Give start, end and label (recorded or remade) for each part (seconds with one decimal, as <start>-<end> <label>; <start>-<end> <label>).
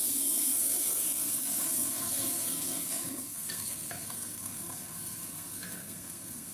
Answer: 0.0-6.5 remade